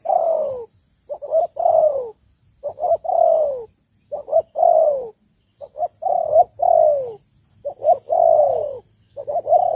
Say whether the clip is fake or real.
real